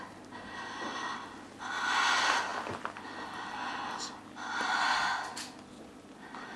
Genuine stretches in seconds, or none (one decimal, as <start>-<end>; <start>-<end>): 0.0-6.6